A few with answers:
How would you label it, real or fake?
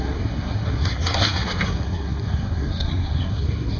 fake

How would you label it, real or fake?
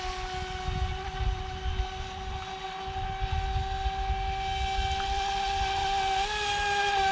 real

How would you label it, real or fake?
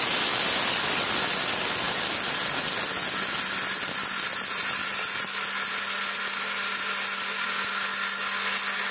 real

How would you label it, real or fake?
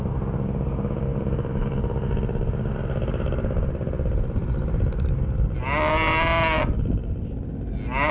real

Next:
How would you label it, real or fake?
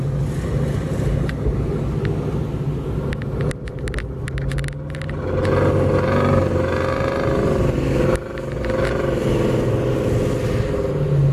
real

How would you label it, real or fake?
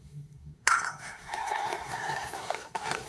fake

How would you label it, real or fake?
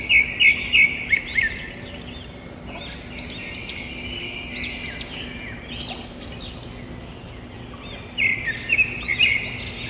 real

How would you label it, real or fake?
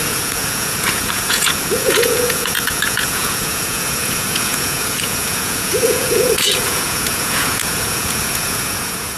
fake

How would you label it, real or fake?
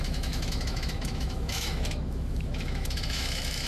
fake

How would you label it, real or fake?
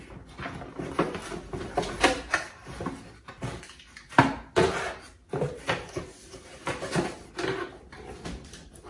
real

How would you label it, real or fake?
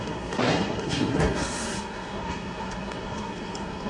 fake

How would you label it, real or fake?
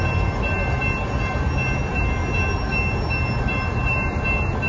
real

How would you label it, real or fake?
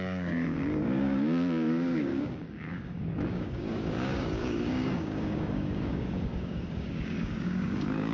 fake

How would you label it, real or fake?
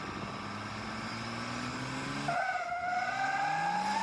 real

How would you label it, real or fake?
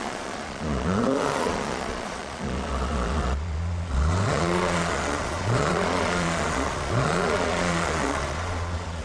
fake